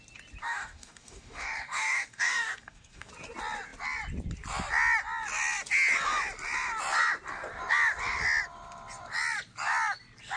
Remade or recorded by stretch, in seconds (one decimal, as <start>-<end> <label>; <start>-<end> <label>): 0.0-0.4 recorded; 0.4-3.1 remade; 3.1-10.4 recorded